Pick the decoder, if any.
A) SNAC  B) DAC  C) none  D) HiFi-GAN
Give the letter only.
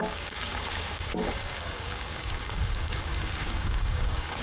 B